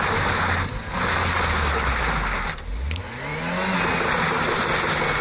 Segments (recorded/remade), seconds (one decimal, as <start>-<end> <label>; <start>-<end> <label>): 0.0-5.2 recorded